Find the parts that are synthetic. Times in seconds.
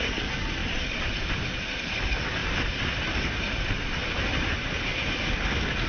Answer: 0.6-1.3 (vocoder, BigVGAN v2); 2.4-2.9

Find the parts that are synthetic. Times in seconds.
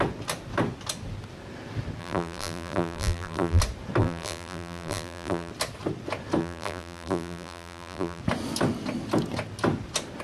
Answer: 2.0-3.6 (vocoder, BigVGAN v2); 4.0-5.5; 6.4-8.2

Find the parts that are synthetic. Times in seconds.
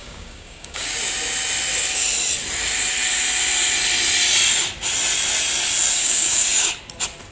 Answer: 0.0-1.0 (codec, DAC); 6.0-6.7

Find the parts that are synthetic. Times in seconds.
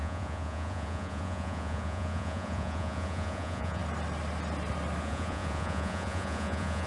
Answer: 0.0-3.8 (vocoder, Vocos); 5.0-6.9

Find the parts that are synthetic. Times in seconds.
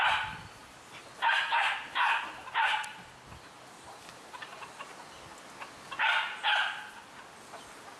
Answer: 0.6-1.4 (vocoder, BigVGAN v2)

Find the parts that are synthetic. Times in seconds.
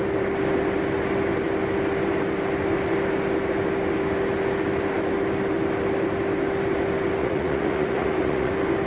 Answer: 7.2-8.5 (vocoder, Vocos)